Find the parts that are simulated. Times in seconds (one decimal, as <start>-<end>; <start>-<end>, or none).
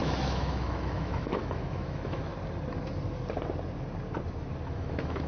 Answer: 0.0-2.3; 4.7-5.3